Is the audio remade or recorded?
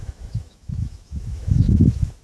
remade